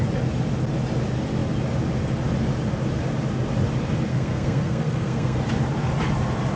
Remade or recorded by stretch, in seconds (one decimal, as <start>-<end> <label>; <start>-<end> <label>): 0.0-4.1 recorded; 4.1-5.4 remade; 5.4-6.6 recorded